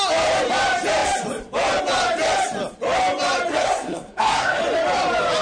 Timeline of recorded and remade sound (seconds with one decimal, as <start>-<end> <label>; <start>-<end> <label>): 0.0-3.5 recorded; 3.5-4.6 remade; 4.6-5.4 recorded